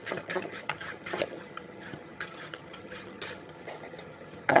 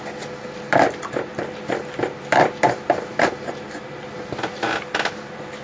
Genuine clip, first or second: second